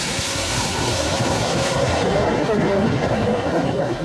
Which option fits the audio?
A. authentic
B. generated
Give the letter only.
B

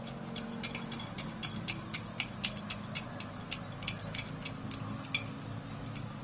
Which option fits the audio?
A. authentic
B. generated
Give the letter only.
A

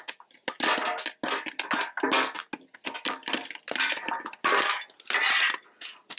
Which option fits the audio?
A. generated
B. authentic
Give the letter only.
B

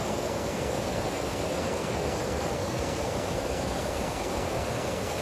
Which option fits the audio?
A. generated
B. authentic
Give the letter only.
A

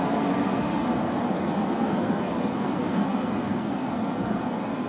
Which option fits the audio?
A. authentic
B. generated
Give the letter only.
B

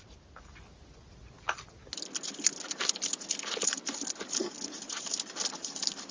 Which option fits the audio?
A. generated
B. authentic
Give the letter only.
B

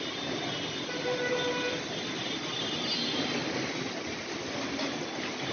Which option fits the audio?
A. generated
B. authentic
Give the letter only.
B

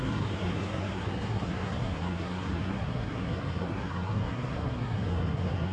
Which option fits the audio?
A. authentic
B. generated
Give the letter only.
B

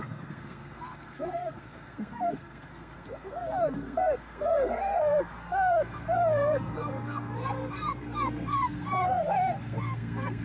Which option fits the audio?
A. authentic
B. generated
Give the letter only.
B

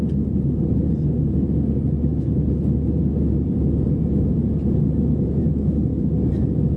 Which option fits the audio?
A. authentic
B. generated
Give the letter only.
A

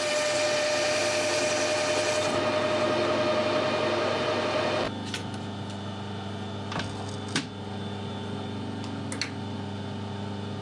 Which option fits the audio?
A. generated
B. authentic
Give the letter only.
B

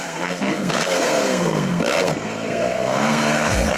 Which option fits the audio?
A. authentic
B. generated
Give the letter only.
B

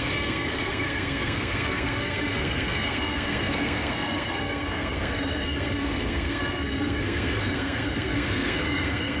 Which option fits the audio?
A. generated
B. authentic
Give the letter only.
A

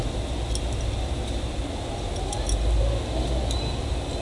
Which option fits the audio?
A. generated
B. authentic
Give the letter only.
B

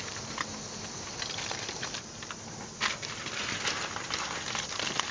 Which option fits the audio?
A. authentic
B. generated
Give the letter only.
A